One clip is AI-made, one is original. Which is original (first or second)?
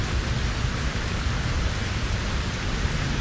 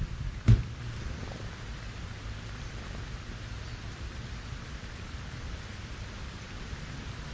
first